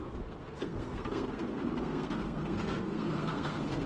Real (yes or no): no